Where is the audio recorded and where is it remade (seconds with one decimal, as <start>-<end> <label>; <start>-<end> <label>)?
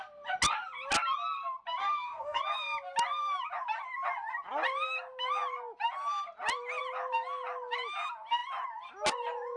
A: 0.0-1.8 recorded; 1.8-2.4 remade; 2.4-9.6 recorded